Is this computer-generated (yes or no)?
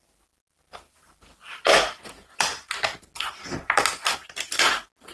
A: no